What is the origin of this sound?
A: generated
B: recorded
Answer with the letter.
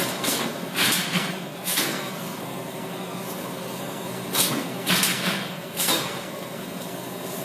A